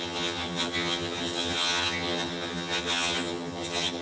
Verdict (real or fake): fake